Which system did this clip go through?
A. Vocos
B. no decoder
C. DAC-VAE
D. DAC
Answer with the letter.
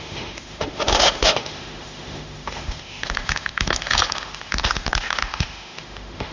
C